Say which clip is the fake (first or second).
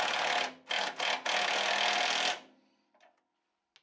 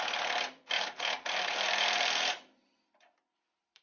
second